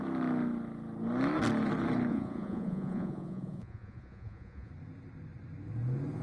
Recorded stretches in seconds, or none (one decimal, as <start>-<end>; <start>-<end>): 0.0-2.1; 4.7-6.2